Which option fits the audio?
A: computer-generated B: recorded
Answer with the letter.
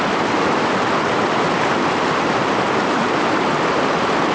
B